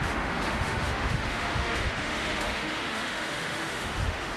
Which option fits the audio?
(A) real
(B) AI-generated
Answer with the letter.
B